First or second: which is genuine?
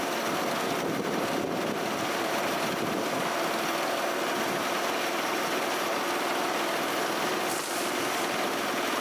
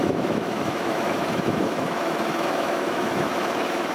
first